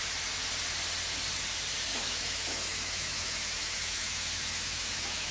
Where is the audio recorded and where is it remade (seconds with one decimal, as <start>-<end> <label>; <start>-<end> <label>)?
0.0-1.9 recorded; 1.9-5.3 remade